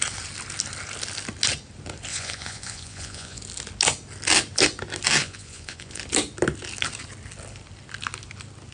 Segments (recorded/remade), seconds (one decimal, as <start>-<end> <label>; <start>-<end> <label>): 0.0-2.1 recorded; 2.1-3.4 remade; 3.4-5.2 recorded; 5.2-6.0 remade; 6.0-8.7 recorded

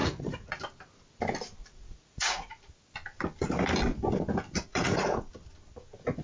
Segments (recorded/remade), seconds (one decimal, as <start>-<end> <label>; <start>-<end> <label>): 0.0-0.6 remade; 0.6-1.6 recorded; 1.6-2.5 remade; 2.5-4.7 recorded; 4.7-5.3 remade; 5.3-6.2 recorded